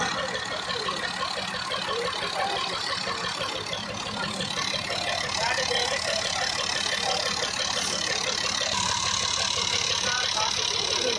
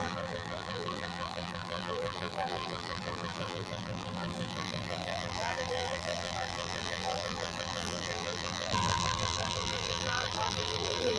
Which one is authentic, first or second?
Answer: first